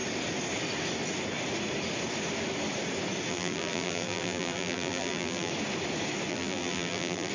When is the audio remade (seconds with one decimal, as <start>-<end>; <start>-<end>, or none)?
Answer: 3.3-5.5; 6.3-7.3